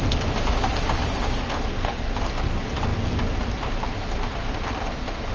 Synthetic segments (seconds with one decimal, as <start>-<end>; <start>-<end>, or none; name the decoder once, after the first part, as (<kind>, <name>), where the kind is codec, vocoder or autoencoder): 1.7-2.2 (codec, SNAC)